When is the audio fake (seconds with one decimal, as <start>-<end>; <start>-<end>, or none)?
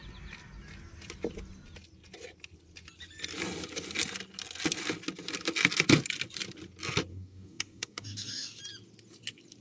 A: 7.1-8.6